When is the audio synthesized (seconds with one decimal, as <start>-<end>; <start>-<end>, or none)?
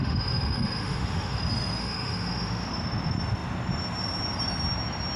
0.0-1.4; 1.8-2.7